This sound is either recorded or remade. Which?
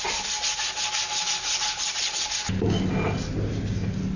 recorded